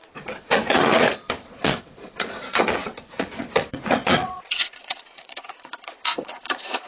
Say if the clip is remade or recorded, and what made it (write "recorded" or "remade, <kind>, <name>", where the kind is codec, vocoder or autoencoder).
remade, vocoder, Vocos